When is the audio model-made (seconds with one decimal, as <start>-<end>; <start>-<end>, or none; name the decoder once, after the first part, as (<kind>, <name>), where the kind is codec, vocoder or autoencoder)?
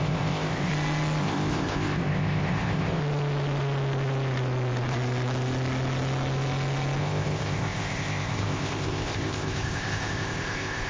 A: 0.0-0.7 (codec, ZipCodec); 1.2-3.0; 7.0-10.9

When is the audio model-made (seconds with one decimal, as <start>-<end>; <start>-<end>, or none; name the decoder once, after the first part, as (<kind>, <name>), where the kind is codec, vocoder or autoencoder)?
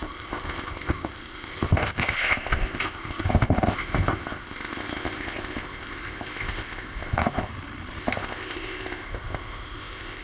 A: 0.0-7.5 (codec, ZipCodec); 8.0-10.2